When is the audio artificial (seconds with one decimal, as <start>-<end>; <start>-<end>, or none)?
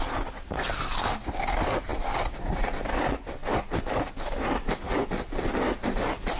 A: none